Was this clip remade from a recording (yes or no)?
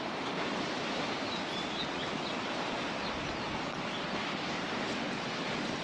no